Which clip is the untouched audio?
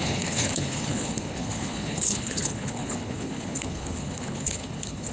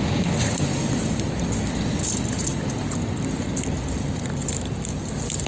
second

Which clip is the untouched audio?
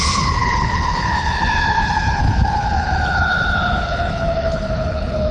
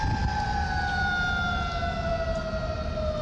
second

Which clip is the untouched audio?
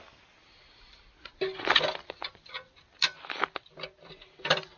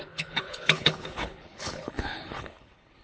first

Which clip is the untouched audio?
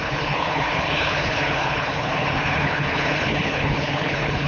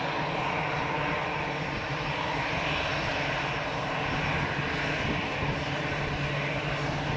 second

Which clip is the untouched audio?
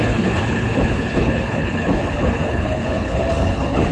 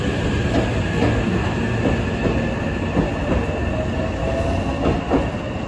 second